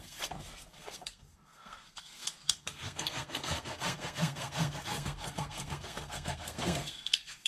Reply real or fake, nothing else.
fake